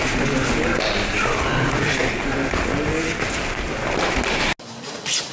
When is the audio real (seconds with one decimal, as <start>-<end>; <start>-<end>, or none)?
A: 0.0-5.3